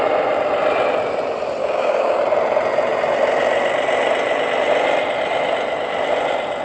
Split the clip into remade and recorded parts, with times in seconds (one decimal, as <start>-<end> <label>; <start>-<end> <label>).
0.0-1.6 recorded; 1.6-2.2 remade; 2.2-6.6 recorded